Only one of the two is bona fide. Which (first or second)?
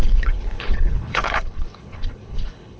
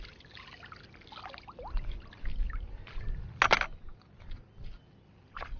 second